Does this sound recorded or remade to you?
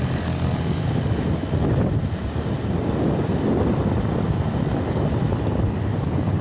recorded